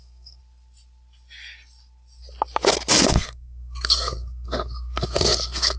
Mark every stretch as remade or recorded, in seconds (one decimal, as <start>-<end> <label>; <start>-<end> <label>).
0.0-0.4 remade; 0.4-3.1 recorded; 3.1-5.8 remade